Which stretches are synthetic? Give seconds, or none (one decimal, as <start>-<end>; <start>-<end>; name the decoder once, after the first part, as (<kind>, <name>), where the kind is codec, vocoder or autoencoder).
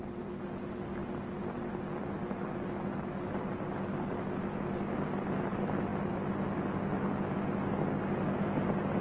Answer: none